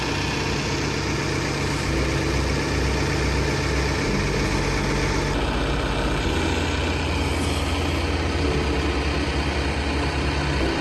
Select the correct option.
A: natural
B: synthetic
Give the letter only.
A